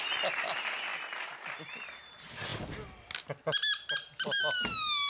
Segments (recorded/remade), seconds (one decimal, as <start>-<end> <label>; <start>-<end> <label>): 0.0-5.1 recorded